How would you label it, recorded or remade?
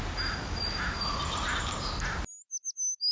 recorded